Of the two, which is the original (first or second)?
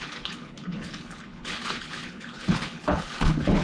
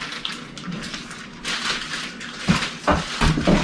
second